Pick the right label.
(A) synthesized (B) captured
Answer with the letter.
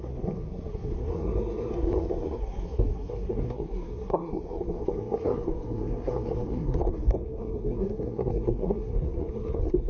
A